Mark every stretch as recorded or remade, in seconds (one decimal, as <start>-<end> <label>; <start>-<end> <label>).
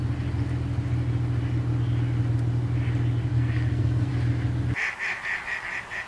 0.0-3.3 recorded; 3.3-4.1 remade; 4.1-6.1 recorded